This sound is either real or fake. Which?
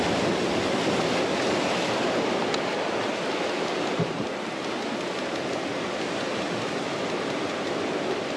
real